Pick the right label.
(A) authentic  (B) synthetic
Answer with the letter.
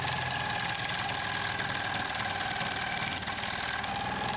A